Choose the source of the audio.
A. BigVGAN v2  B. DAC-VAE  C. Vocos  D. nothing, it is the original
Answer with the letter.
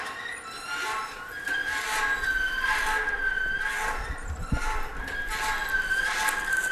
D